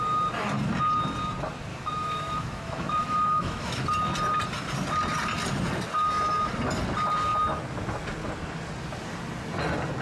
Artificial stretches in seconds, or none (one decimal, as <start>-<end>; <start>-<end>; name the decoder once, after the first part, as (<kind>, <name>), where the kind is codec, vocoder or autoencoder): 1.7-3.8 (autoencoder, DAC-VAE)